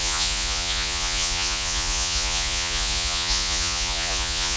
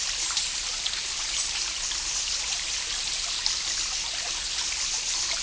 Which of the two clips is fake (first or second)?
first